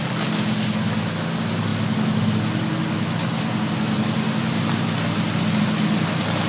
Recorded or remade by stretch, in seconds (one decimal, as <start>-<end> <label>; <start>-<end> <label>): 0.0-6.5 recorded